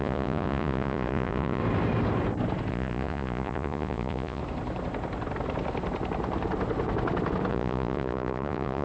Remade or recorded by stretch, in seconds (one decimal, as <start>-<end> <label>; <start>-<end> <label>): 0.0-1.6 remade; 1.6-2.7 recorded; 2.7-4.4 remade; 4.4-7.5 recorded; 7.5-8.8 remade